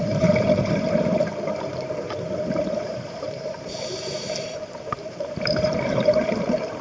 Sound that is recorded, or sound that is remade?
remade